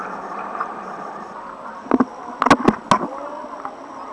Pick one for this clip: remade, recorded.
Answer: recorded